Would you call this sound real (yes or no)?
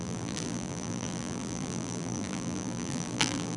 no